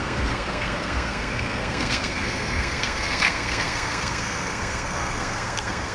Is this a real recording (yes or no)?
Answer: no